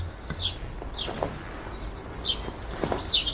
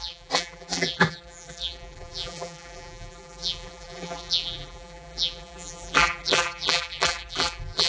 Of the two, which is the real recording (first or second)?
first